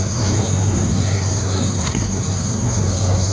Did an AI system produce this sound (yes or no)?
yes